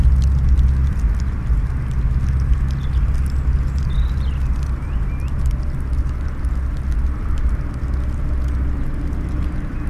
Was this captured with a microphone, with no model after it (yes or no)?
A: yes